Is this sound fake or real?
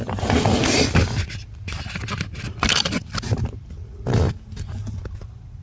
real